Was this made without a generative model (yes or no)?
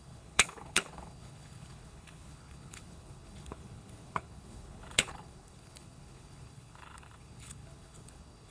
no